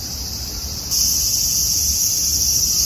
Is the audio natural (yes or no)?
yes